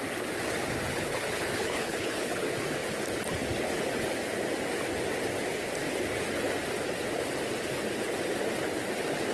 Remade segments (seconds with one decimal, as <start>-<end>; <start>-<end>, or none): 0.9-2.4